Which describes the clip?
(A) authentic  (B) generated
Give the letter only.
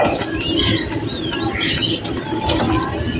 A